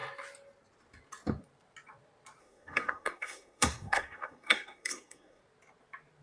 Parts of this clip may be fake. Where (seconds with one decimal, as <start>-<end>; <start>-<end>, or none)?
2.4-5.4